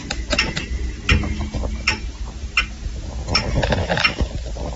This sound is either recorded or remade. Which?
recorded